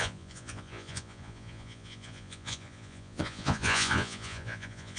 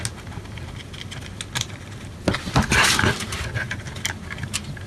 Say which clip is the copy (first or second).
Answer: first